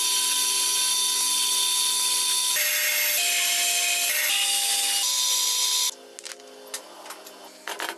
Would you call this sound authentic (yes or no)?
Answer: yes